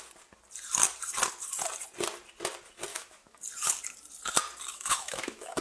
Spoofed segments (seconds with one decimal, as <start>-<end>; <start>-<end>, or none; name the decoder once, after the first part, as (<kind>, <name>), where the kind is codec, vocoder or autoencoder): 2.9-3.4 (autoencoder, DAC-VAE); 4.7-5.6

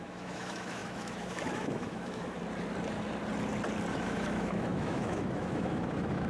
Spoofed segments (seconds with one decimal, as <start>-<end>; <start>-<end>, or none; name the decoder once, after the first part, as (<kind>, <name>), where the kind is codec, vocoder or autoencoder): 0.0-2.4 (autoencoder, DAC-VAE); 3.9-6.3

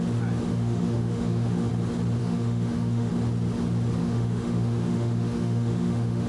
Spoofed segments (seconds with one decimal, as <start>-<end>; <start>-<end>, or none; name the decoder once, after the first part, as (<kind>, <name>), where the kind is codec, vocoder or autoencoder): 0.5-1.7 (autoencoder, DAC-VAE); 2.2-3.1; 4.0-6.3

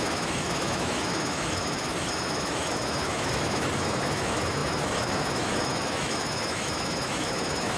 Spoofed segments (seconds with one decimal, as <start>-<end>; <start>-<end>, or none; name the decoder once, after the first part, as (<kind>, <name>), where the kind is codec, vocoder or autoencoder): 0.0-7.8 (autoencoder, DAC-VAE)

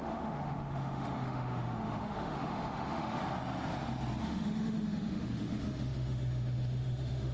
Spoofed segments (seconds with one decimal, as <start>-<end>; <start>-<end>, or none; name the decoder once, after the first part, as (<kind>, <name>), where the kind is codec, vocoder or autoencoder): 0.0-3.2 (autoencoder, DAC-VAE); 4.2-7.3

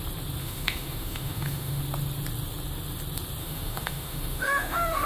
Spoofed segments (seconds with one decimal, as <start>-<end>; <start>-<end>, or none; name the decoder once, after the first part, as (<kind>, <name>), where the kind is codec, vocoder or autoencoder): 0.4-1.8 (autoencoder, DAC-VAE); 3.4-5.1